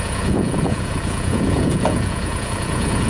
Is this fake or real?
fake